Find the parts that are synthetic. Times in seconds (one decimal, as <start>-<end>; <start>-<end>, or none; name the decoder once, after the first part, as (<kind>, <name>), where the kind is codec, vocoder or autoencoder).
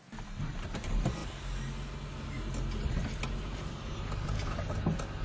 none